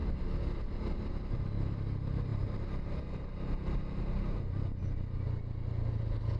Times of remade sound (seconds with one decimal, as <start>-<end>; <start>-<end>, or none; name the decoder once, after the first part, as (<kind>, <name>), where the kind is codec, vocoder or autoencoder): none